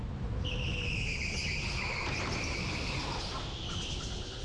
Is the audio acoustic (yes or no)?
yes